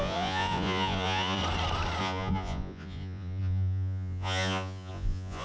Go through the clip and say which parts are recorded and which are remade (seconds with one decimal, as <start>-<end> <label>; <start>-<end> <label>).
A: 0.0-1.4 remade; 1.4-2.0 recorded; 2.0-5.4 remade